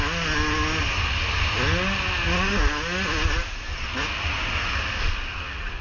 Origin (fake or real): real